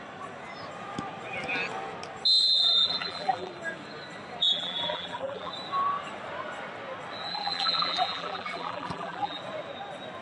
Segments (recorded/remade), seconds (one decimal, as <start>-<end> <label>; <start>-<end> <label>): 0.0-2.4 recorded; 2.4-3.5 remade; 3.5-4.4 recorded; 4.4-5.5 remade; 5.5-7.3 recorded; 7.3-9.4 remade; 9.4-10.2 recorded